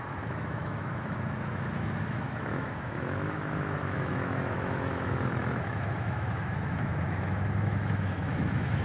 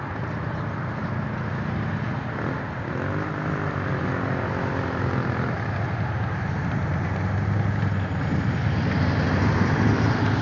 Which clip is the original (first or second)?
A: second